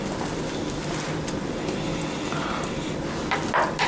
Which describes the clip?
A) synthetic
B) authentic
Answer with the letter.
B